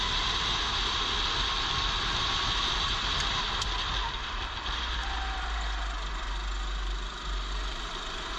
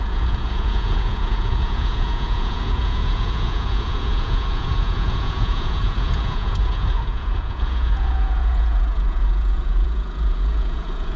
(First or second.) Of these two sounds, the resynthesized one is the second